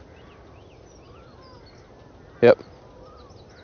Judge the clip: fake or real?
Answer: real